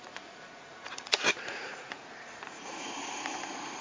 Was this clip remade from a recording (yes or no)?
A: yes